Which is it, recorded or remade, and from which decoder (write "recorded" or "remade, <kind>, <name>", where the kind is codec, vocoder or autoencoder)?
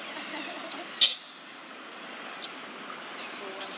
recorded